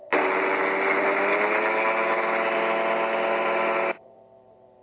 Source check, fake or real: real